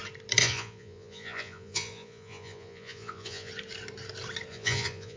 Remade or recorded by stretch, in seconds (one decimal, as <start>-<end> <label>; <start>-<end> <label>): 0.0-0.4 recorded; 0.4-3.5 remade; 3.5-4.5 recorded; 4.5-5.2 remade

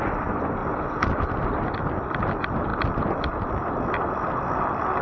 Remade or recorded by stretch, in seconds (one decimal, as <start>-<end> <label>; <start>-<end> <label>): 0.0-5.0 recorded

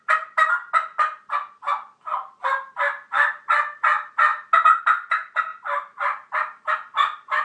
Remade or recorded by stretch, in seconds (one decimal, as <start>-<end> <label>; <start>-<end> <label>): 0.0-5.5 recorded; 5.5-6.7 remade; 6.7-7.4 recorded